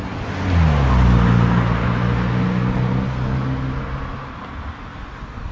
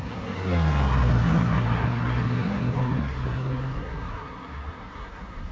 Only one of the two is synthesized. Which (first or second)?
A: second